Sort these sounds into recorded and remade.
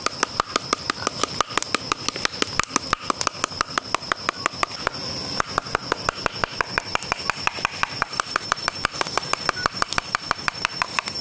recorded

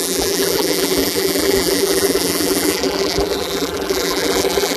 remade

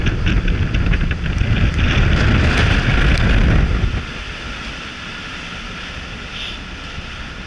recorded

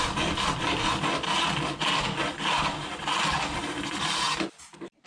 recorded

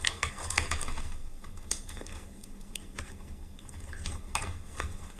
remade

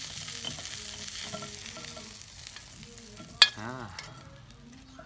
recorded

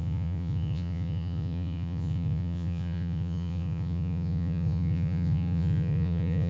remade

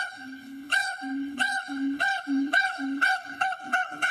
remade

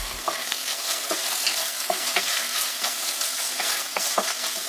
remade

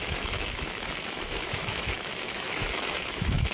remade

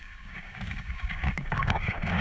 remade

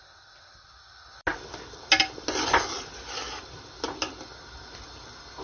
recorded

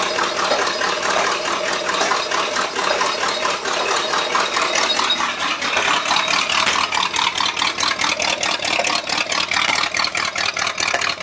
recorded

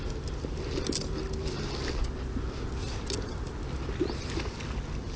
recorded